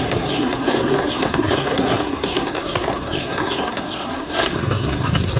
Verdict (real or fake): fake